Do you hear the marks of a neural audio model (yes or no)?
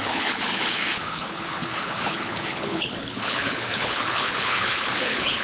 yes